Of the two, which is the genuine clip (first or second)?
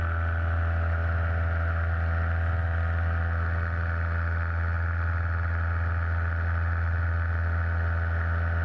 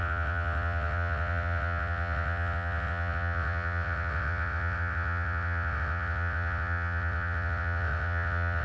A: first